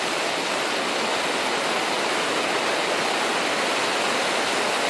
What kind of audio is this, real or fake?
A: real